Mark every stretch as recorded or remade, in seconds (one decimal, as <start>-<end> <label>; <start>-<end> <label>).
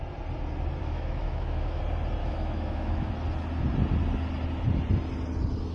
0.0-0.8 recorded; 0.8-1.8 remade; 1.8-2.2 recorded; 2.2-3.1 remade; 3.1-5.7 recorded